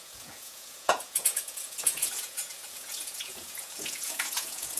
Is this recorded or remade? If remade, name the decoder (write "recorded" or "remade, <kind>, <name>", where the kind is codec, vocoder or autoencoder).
remade, vocoder, Vocos